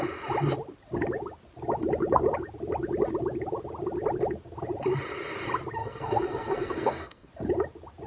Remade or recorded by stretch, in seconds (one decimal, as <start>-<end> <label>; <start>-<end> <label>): 0.0-5.8 recorded; 5.8-7.3 remade; 7.3-8.1 recorded